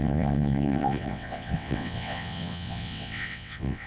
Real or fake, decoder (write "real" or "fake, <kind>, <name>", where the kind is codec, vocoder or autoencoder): fake, vocoder, WaveNeXt